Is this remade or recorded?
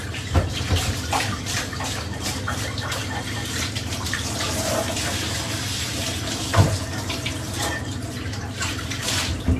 remade